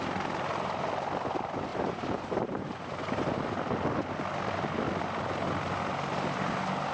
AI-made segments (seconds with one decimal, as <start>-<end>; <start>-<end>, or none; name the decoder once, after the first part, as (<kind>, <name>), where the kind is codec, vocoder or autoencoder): 1.7-3.3 (vocoder, BigVGAN v2)